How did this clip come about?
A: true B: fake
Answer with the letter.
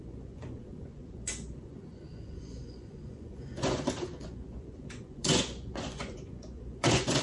B